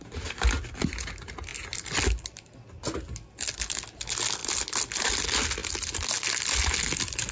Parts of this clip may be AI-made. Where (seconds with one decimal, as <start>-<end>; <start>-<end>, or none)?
none